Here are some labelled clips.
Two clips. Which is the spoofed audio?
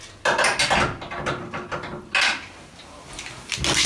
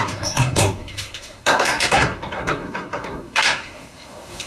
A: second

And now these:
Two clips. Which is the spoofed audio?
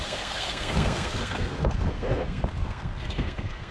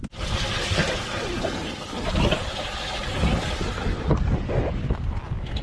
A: first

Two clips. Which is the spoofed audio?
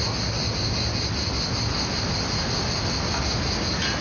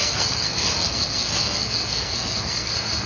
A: second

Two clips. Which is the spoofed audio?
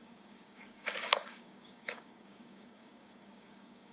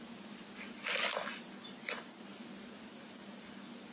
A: first